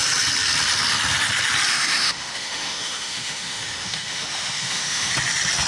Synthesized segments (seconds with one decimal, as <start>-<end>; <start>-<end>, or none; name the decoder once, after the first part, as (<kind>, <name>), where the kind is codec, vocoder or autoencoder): 1.7-5.1 (autoencoder, DAC-VAE)